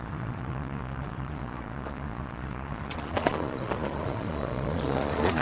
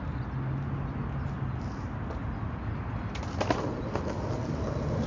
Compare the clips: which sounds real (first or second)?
second